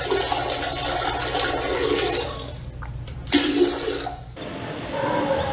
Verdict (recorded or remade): recorded